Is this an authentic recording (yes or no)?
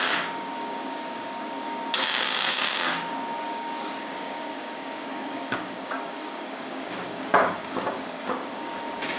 no